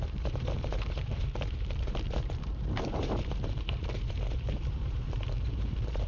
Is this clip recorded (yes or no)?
no